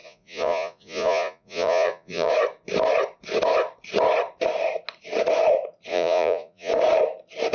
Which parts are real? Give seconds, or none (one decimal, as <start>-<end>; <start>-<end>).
2.3-5.9; 6.7-7.5